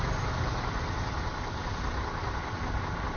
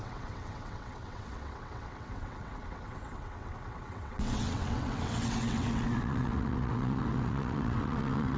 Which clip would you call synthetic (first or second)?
second